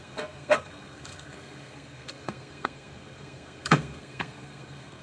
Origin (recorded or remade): remade